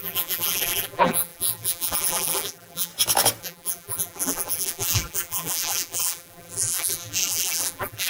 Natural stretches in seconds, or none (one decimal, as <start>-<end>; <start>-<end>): 2.9-3.4